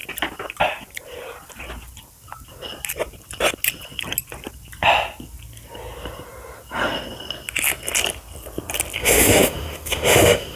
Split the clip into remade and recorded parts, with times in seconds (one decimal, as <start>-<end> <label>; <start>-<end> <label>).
0.0-9.0 recorded; 9.0-10.6 remade